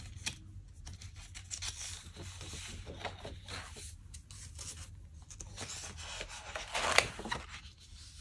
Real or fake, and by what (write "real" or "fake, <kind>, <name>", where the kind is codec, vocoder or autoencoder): real